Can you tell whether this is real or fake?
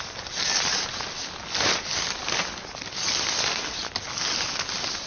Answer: real